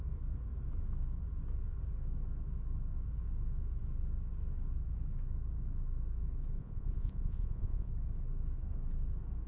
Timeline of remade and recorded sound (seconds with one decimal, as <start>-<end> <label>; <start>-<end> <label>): 0.0-6.6 recorded; 6.6-7.9 remade; 7.9-9.5 recorded